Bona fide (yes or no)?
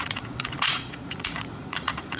no